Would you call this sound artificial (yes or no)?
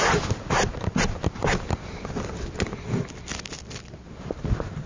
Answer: no